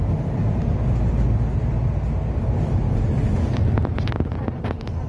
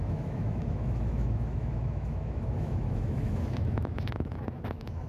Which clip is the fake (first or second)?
second